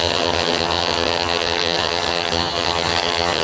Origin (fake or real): fake